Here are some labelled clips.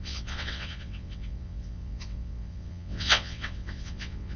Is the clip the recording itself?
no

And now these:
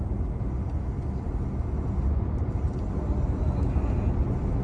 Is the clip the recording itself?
yes